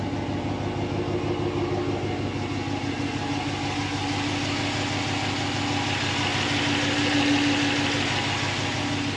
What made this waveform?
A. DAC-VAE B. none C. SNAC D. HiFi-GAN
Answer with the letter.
B